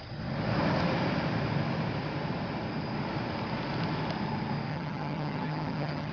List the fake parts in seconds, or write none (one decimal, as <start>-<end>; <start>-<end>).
4.7-6.1